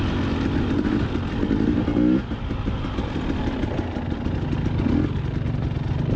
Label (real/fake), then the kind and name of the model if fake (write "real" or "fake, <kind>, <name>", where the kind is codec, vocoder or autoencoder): real